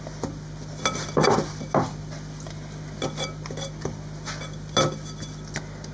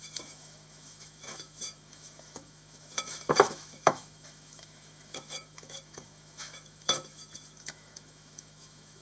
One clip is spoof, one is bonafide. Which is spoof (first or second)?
second